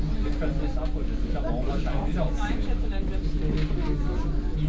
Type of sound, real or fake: real